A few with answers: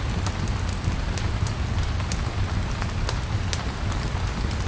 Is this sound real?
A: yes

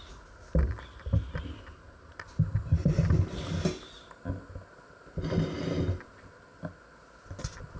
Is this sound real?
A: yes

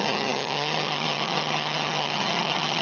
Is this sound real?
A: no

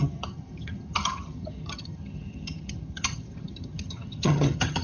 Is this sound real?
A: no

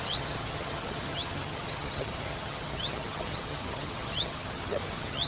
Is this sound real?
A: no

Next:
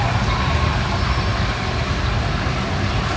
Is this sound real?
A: yes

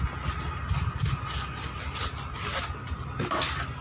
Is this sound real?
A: yes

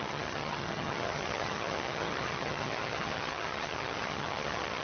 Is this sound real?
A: no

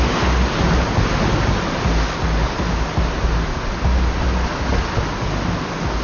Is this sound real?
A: yes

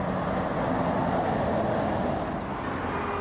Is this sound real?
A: yes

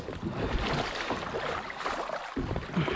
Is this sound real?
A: yes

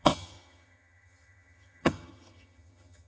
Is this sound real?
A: no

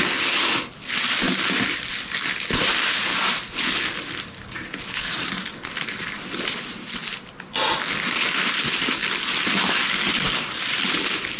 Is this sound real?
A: yes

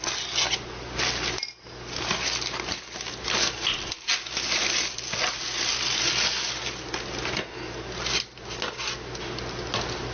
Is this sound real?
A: yes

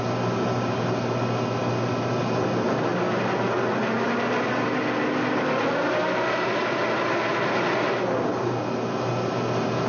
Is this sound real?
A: yes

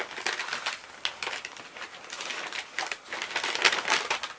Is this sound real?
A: yes